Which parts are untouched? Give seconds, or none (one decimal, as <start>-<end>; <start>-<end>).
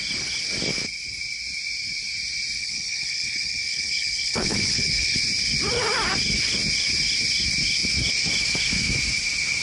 0.0-2.6; 5.2-9.6